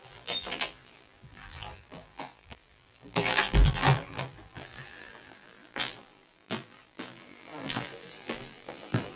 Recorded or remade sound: remade